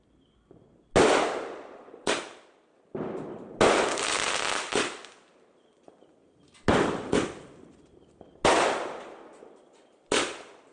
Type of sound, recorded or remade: recorded